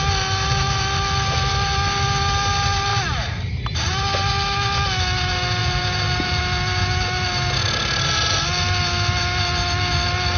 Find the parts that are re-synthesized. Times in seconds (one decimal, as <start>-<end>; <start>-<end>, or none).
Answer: 2.9-4.0; 5.6-6.4